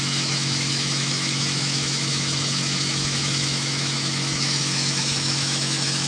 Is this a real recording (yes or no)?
no